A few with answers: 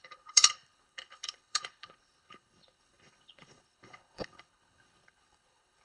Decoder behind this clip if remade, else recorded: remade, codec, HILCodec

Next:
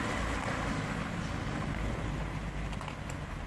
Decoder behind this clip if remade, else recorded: recorded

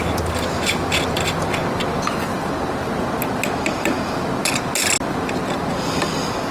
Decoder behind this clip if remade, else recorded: recorded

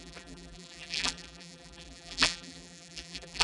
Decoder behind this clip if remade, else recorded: remade, vocoder, BigVGAN v2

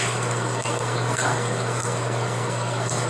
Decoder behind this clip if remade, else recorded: remade, codec, SNAC